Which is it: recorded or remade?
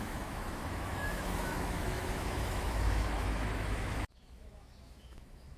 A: remade